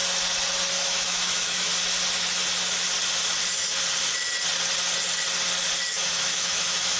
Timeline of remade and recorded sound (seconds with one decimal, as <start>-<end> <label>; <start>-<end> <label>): 0.0-0.8 recorded; 0.8-1.7 remade; 1.7-5.9 recorded; 5.9-7.0 remade